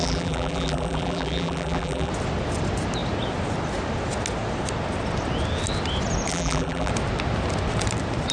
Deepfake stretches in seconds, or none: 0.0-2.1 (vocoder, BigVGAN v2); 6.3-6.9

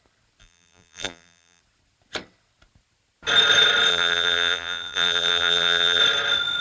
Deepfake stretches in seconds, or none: 0.4-1.6 (vocoder, BigVGAN v2); 3.9-6.0

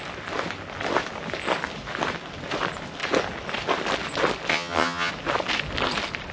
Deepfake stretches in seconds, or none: 4.5-5.1 (vocoder, HiFi-GAN)

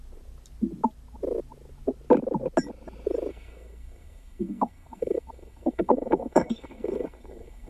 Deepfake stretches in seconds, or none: 3.3-7.7 (codec, SNAC)

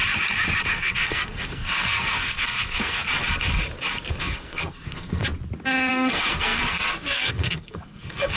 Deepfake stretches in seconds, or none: 0.7-3.1 (codec, SNAC); 4.1-5.2; 5.9-8.4